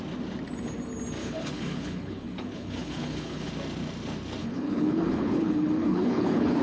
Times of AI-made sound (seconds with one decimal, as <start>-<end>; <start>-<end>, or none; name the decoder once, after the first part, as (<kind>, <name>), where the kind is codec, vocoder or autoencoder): 1.2-3.5 (codec, HILCodec); 4.4-6.6

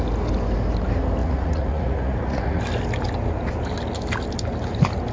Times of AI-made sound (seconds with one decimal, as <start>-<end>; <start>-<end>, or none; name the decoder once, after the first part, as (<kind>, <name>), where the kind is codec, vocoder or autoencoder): 1.2-2.6 (vocoder, Vocos)

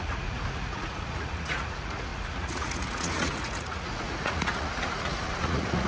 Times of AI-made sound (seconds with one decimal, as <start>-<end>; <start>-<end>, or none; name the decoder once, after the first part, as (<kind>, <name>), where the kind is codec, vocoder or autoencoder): 0.0-5.9 (vocoder, Vocos)

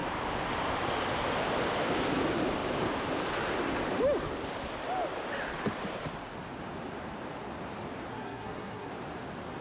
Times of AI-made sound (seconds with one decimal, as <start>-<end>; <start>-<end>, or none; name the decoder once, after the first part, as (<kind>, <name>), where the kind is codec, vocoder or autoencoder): 8.1-8.9 (codec, SNAC)

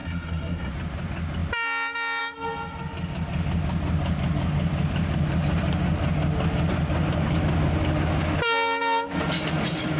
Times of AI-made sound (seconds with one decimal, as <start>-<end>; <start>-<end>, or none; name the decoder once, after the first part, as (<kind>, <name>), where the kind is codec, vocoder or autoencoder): 0.0-0.7 (codec, SNAC)

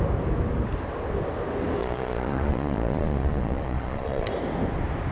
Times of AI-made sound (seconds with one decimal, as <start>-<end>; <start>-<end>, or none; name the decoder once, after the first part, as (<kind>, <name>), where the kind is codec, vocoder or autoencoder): 1.8-4.3 (vocoder, Vocos)